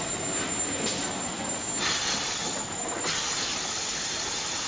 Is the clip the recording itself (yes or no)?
yes